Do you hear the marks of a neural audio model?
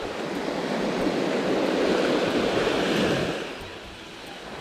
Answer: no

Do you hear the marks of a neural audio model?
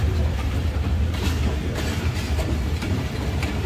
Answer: yes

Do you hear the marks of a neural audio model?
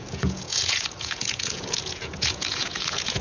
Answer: yes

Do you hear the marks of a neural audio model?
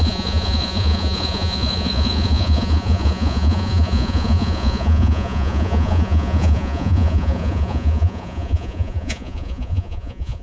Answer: yes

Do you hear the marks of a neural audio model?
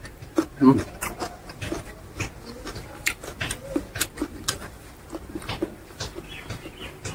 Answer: no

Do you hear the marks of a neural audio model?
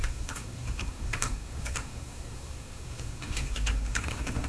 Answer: yes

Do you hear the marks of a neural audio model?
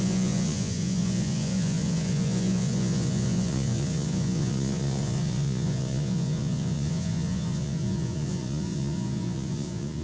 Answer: yes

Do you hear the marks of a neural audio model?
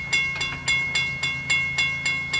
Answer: no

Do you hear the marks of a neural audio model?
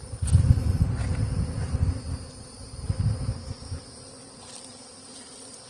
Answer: no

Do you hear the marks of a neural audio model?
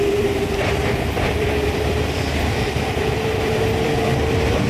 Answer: yes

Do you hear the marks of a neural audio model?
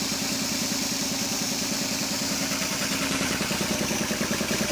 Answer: no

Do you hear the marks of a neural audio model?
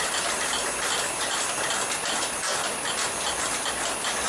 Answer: no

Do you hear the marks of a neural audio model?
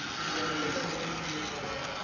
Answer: no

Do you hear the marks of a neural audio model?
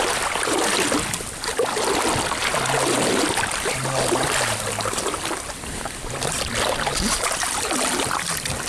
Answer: no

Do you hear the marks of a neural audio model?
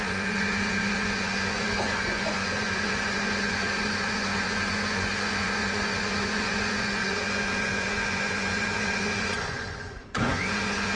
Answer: yes